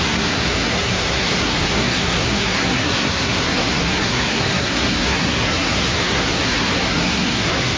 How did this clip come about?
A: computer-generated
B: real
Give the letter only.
A